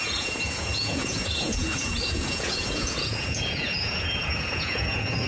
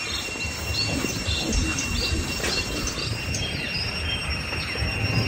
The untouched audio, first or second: second